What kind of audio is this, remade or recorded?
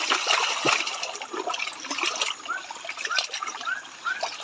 recorded